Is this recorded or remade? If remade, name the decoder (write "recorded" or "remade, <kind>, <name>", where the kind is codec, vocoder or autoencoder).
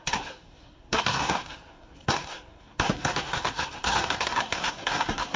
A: remade, codec, SNAC